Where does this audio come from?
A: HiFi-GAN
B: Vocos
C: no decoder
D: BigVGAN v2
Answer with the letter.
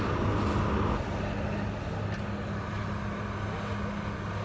C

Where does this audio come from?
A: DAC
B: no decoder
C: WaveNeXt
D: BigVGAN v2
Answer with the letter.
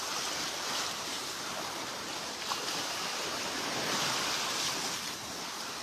B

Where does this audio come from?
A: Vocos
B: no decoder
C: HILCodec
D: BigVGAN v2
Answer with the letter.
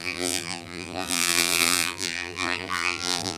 D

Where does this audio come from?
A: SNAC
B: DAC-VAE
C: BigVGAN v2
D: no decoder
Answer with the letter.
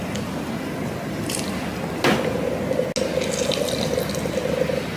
D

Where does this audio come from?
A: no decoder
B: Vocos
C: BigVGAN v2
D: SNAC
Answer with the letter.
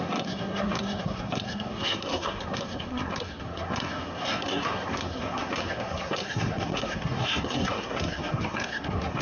D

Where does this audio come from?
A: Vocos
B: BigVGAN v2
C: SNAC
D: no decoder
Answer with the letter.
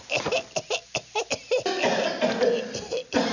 D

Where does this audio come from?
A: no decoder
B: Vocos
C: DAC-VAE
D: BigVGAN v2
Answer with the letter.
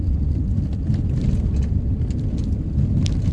A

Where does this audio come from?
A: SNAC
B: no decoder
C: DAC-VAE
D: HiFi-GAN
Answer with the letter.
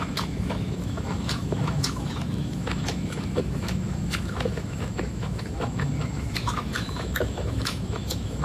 C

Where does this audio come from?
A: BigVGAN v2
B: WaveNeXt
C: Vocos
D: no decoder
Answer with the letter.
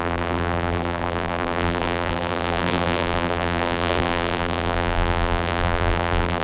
A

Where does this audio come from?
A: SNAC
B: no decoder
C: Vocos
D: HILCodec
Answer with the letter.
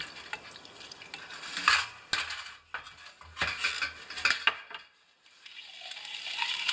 B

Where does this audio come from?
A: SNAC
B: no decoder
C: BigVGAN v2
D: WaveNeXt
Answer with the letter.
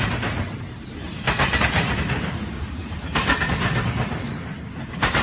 C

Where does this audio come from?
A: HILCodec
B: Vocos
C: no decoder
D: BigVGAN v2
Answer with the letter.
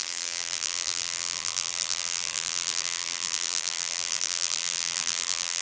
D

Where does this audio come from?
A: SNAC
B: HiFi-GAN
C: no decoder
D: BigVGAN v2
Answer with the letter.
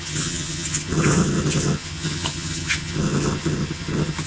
B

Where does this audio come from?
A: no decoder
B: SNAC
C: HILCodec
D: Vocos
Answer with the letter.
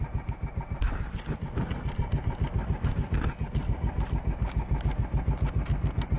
A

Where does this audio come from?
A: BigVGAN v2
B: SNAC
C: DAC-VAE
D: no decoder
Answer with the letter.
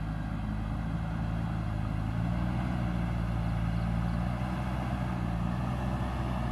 D